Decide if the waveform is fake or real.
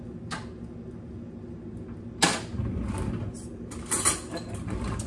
real